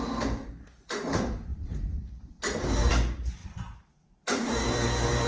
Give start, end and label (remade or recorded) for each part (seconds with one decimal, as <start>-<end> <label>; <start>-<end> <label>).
0.0-1.5 recorded; 1.5-2.9 remade; 2.9-3.4 recorded; 3.4-5.3 remade